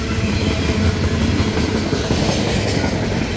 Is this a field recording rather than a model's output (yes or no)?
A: yes